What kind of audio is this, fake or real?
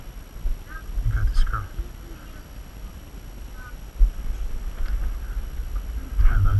real